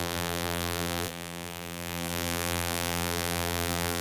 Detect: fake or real fake